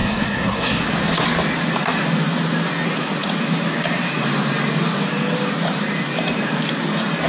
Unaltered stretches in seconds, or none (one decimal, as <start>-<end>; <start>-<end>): 0.8-7.3